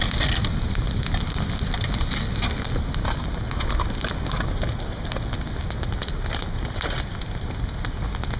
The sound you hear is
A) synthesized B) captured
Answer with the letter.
B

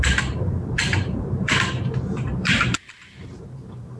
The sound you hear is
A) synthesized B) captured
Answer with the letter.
A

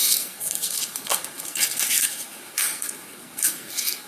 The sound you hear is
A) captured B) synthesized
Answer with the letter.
B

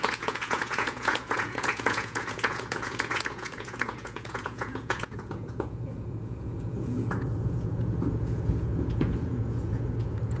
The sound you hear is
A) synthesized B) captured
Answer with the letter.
A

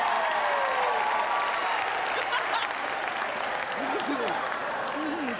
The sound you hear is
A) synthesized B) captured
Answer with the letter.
B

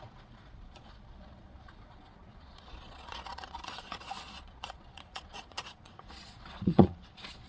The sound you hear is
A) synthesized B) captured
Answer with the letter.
A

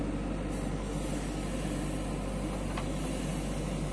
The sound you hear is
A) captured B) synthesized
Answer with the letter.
A